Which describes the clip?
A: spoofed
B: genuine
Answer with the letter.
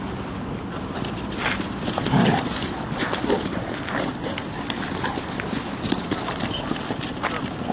B